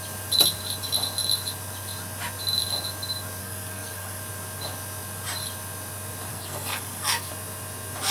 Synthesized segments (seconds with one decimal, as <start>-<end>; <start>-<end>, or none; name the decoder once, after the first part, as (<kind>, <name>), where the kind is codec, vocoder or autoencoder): 3.4-4.2 (codec, SNAC); 6.3-7.3